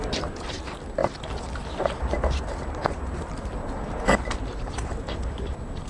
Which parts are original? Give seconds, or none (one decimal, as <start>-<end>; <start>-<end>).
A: none